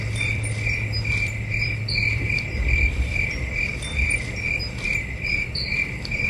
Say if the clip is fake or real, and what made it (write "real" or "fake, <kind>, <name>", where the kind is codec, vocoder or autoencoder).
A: fake, vocoder, BigVGAN v2